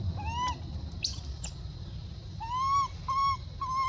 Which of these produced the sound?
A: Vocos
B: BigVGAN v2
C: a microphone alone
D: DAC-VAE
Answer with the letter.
C